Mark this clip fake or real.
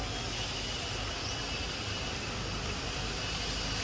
real